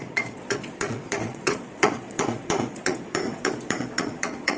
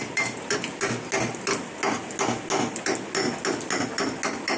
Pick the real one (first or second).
second